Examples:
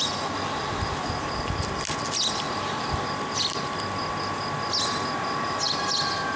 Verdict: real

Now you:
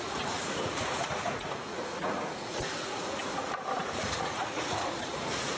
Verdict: fake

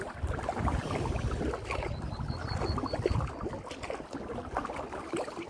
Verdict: real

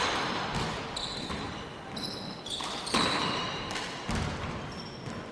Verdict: real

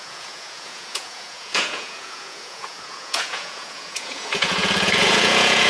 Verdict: fake